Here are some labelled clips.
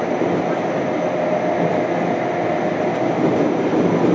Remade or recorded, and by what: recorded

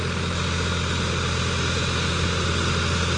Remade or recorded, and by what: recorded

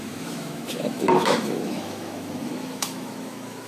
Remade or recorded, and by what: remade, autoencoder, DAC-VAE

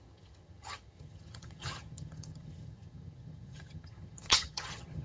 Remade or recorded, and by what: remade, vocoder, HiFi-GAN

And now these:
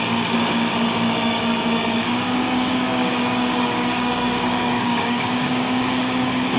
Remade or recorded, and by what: remade, codec, DAC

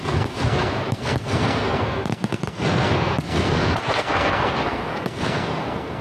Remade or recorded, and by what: remade, codec, SNAC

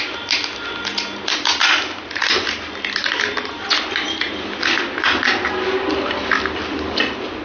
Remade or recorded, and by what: recorded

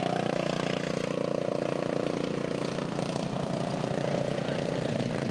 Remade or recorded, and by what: remade, vocoder, BigVGAN v2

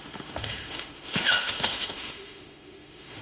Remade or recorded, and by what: remade, autoencoder, DAC-VAE